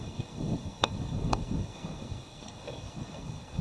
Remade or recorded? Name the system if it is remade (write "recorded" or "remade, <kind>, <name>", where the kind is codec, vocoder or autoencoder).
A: remade, codec, SNAC